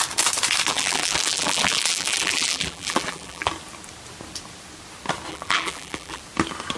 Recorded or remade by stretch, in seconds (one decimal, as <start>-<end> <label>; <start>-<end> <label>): 0.0-0.7 recorded; 0.7-3.5 remade; 3.5-5.3 recorded; 5.3-6.2 remade; 6.2-6.8 recorded